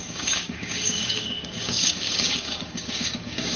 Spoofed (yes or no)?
yes